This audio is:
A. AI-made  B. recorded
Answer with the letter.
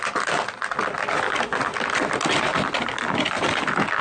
B